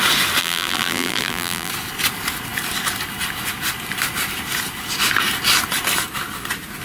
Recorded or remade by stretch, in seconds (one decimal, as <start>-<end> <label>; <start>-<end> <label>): 0.0-0.4 recorded; 0.4-1.7 remade; 1.7-6.8 recorded